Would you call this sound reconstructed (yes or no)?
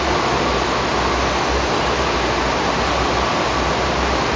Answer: no